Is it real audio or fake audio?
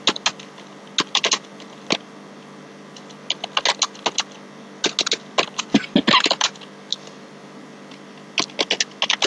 real